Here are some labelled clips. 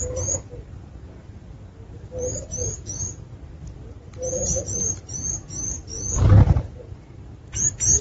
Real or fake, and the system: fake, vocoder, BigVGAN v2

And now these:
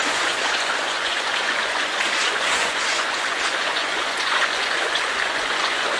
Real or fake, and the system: fake, vocoder, Vocos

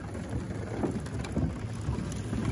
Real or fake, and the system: real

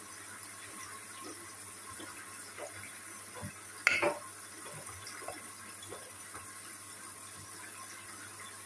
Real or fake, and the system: real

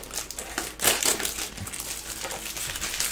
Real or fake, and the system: real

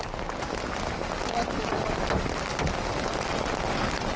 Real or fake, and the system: real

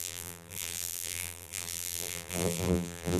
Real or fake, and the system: fake, vocoder, BigVGAN v2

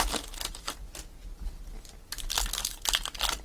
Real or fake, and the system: real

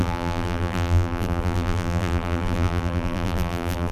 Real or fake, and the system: fake, vocoder, BigVGAN v2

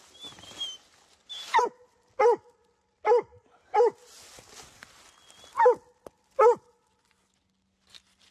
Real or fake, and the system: real